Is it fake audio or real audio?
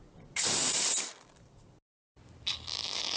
real